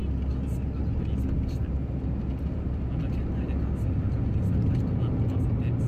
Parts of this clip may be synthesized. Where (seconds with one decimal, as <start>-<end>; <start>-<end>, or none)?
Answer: none